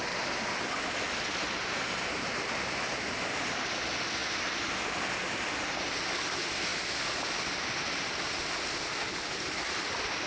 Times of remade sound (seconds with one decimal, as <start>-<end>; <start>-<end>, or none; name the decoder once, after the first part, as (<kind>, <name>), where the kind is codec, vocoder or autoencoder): none